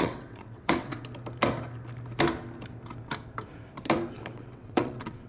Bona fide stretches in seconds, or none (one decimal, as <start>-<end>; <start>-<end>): 0.9-4.1